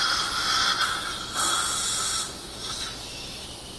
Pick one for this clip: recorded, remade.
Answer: recorded